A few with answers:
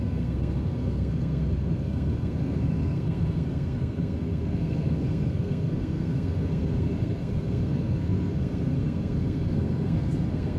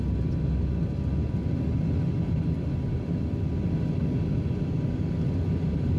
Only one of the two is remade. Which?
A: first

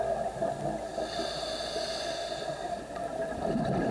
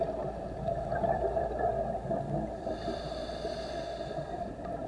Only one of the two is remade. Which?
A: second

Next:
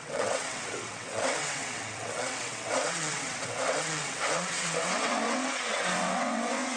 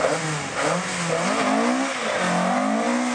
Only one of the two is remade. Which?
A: first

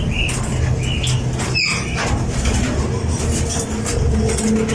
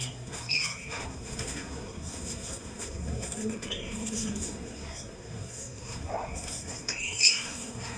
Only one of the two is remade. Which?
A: second